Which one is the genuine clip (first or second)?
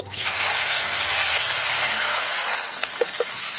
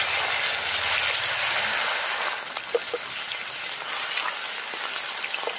second